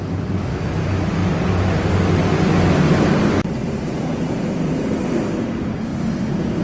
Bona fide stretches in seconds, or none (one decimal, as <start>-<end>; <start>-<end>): 0.0-1.2; 2.5-3.6; 5.5-5.9